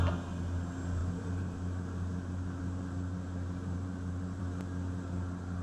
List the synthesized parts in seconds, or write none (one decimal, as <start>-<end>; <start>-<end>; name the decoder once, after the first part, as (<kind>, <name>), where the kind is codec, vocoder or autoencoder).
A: 1.0-4.4 (vocoder, BigVGAN v2)